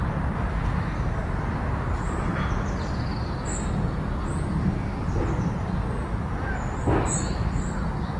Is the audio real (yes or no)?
yes